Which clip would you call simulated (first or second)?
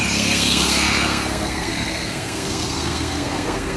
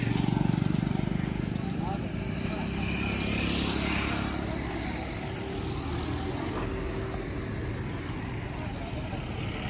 first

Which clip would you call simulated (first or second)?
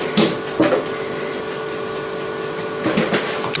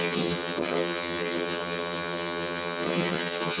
second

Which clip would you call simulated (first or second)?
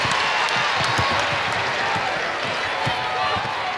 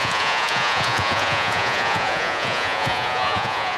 second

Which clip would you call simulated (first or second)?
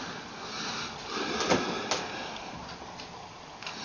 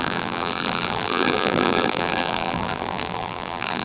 second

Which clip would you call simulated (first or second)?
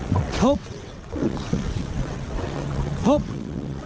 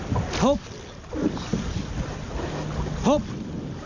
first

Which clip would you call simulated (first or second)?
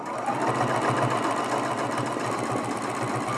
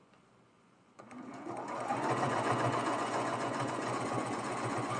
second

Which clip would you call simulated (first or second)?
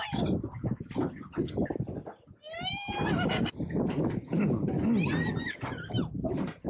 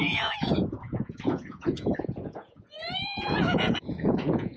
second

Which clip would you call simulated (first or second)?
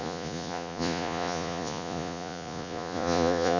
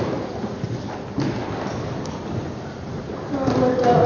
first